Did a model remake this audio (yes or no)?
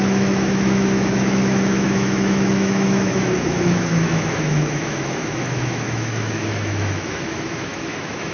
yes